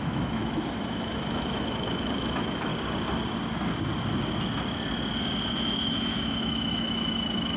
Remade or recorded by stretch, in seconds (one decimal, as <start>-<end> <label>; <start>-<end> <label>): 0.0-2.7 remade; 2.7-5.5 recorded; 5.5-7.6 remade